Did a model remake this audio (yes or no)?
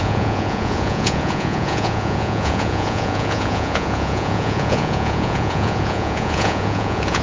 yes